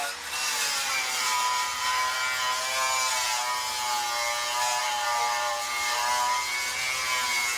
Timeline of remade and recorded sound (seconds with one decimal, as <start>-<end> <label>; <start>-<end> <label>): 0.0-2.2 remade; 2.2-4.8 recorded; 4.8-6.0 remade; 6.0-7.6 recorded